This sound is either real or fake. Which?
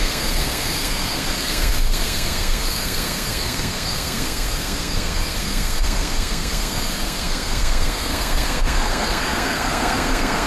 fake